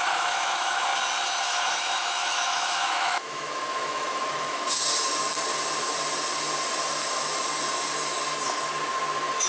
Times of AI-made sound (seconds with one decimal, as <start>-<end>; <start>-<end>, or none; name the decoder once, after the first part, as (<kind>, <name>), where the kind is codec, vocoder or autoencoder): 0.0-0.9 (autoencoder, DAC-VAE); 1.4-4.8